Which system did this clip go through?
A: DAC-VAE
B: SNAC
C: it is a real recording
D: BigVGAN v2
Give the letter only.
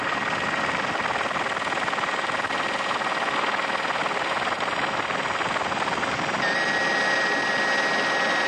C